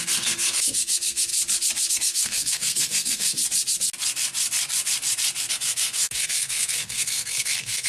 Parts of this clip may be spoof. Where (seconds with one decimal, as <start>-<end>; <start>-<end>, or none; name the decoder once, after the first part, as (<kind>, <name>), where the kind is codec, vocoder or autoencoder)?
0.0-1.3 (codec, SNAC); 1.9-3.4; 5.5-7.9

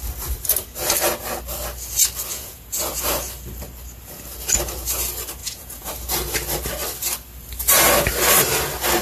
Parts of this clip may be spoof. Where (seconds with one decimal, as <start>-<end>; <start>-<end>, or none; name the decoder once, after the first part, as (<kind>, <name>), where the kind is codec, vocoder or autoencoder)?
2.3-2.9 (vocoder, Vocos); 5.4-5.9